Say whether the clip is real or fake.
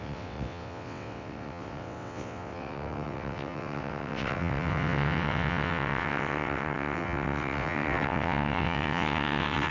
fake